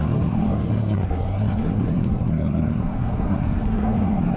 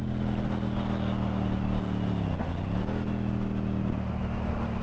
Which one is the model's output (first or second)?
first